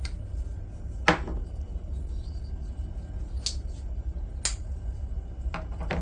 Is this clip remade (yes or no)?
no